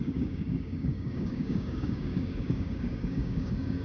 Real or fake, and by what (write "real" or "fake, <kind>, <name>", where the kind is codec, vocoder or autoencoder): fake, codec, DAC